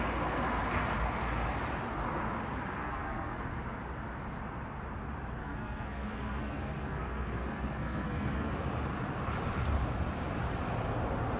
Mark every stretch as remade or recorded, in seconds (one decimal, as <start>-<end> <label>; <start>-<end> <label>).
0.0-2.8 recorded; 2.8-3.4 remade; 3.4-5.4 recorded; 5.4-8.5 remade; 8.5-11.4 recorded